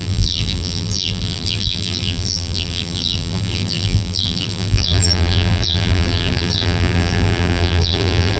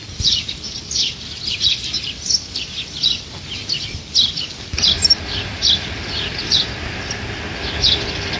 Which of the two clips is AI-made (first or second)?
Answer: first